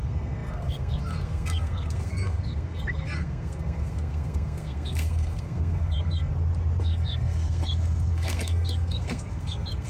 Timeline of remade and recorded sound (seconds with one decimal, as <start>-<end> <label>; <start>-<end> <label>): 0.0-6.3 remade; 6.3-6.8 recorded; 6.8-9.9 remade